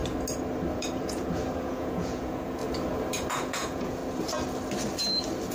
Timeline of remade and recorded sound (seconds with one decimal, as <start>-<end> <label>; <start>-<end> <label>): 0.0-0.7 recorded; 0.7-2.6 remade; 2.6-3.3 recorded; 3.3-4.0 remade; 4.0-5.5 recorded